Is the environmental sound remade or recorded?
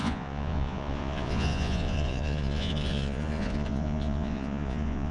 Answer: remade